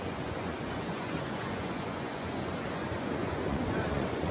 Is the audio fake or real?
fake